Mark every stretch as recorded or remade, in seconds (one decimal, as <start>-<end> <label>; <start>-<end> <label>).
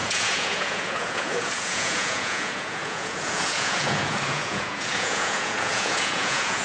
0.0-6.6 remade